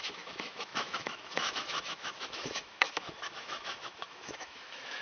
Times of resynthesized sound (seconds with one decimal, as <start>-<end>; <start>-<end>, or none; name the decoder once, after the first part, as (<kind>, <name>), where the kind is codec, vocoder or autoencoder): 0.0-5.0 (autoencoder, DAC-VAE)